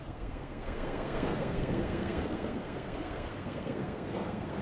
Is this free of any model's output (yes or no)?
no